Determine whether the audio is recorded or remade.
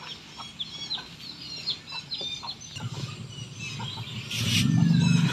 recorded